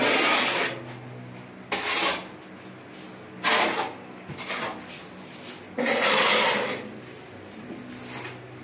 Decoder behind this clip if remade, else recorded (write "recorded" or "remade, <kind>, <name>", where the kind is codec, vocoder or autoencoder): recorded